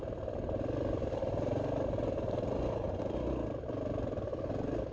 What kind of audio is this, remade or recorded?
recorded